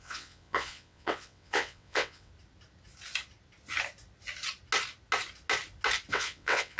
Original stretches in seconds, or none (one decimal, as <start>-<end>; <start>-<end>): 2.3-6.1